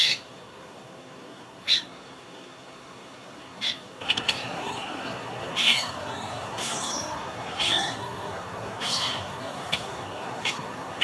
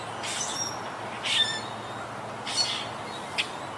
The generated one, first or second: first